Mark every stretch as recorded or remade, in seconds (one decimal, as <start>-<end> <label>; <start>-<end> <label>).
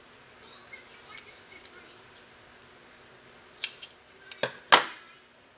0.0-5.6 recorded